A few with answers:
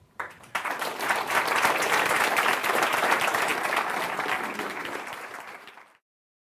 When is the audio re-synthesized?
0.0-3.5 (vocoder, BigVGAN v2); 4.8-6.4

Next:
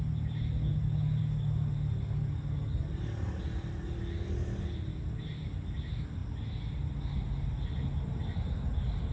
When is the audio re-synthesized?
none

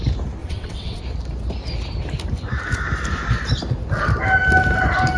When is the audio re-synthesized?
0.4-1.0 (vocoder, WaveNeXt)

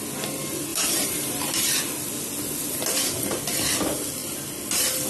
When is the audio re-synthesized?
0.7-1.8 (vocoder, BigVGAN v2)

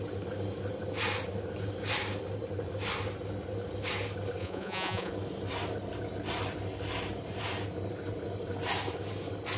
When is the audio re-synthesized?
4.4-5.1 (vocoder, Vocos)

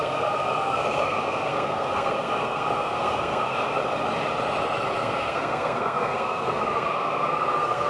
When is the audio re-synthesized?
0.0-3.8 (codec, SNAC); 5.0-7.9

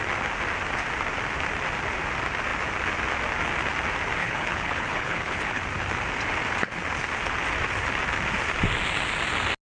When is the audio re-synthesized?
4.2-5.6 (codec, HILCodec)